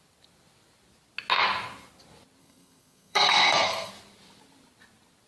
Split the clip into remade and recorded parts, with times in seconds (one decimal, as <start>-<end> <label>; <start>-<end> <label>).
0.0-2.4 recorded; 2.4-3.9 remade; 3.9-5.3 recorded